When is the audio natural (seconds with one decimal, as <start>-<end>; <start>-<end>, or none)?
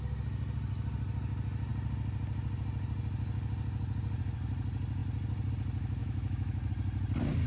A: 0.0-6.0; 6.7-7.5